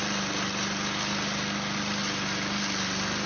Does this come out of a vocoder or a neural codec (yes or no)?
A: no